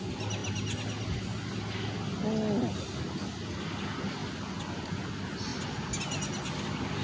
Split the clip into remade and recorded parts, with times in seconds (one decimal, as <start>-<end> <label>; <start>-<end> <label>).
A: 0.0-7.0 recorded

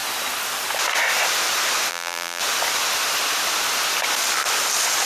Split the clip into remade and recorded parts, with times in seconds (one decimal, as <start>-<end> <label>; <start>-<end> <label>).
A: 0.0-1.9 recorded; 1.9-2.4 remade; 2.4-5.1 recorded

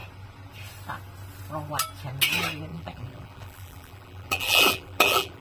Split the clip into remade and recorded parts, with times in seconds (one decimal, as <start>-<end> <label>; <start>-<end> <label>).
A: 0.0-2.7 recorded; 2.7-5.4 remade

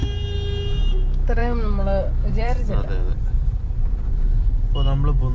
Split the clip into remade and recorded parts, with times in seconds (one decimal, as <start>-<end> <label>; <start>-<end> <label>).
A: 0.0-1.4 recorded; 1.4-4.6 remade; 4.6-5.3 recorded

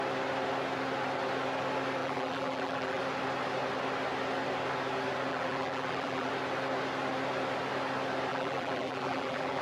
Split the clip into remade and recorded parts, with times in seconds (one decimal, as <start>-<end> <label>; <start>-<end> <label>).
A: 0.0-2.0 recorded; 2.0-3.0 remade; 3.0-5.3 recorded; 5.3-6.3 remade; 6.3-8.3 recorded; 8.3-9.6 remade

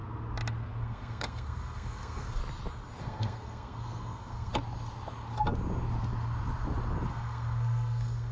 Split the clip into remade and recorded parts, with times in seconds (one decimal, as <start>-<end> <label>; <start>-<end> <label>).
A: 0.0-0.8 recorded; 0.8-2.4 remade; 2.4-3.0 recorded; 3.0-4.5 remade; 4.5-7.1 recorded; 7.1-8.3 remade

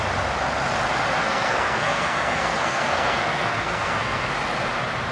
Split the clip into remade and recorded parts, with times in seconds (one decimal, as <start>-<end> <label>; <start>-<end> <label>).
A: 0.0-1.2 recorded; 1.2-4.3 remade; 4.3-5.1 recorded